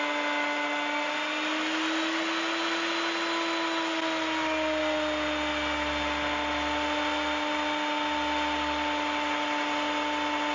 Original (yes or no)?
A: yes